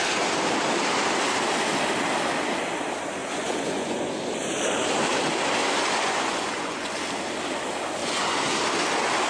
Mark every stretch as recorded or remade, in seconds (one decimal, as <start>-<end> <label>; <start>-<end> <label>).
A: 0.0-3.2 recorded; 3.2-4.2 remade; 4.2-5.6 recorded; 5.6-7.0 remade; 7.0-8.0 recorded; 8.0-8.6 remade; 8.6-9.3 recorded